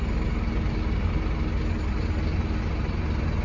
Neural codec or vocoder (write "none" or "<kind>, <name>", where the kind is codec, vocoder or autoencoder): none